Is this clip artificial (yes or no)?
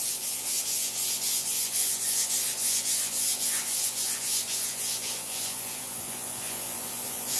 yes